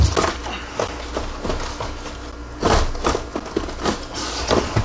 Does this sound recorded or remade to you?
recorded